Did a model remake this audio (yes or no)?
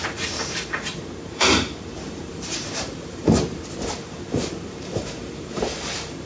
yes